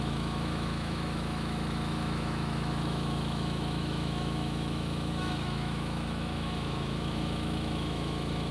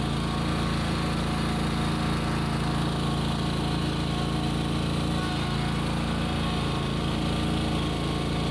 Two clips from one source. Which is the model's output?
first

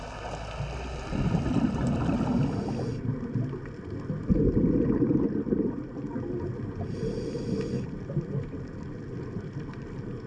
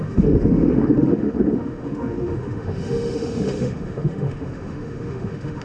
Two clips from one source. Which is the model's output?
second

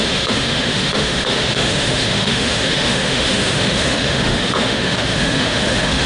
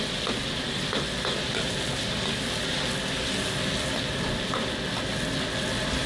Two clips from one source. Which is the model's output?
first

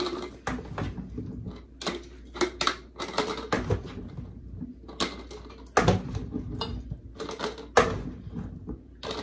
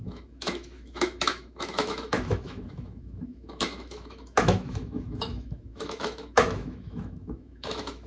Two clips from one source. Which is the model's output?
second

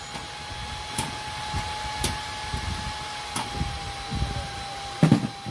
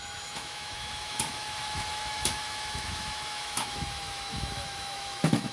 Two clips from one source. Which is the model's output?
second